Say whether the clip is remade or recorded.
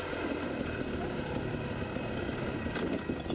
recorded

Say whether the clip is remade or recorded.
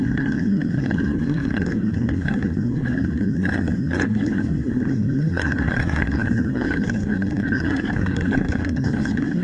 remade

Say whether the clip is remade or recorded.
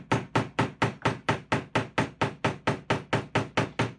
recorded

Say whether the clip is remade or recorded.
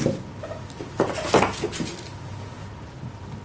recorded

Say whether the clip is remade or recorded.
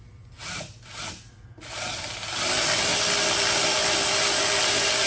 recorded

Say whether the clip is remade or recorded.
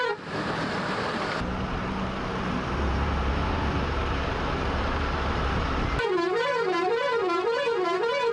remade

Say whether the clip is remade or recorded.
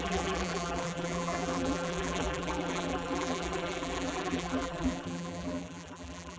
remade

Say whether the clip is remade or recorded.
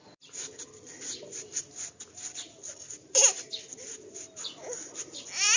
recorded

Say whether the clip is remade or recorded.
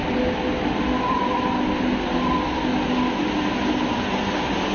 recorded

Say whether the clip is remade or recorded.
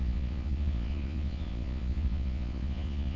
remade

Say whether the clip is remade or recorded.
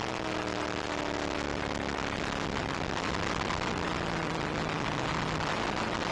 recorded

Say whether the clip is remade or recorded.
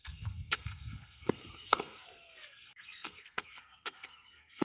remade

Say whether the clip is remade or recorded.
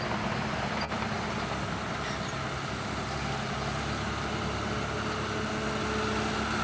recorded